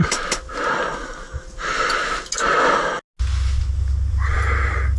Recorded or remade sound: recorded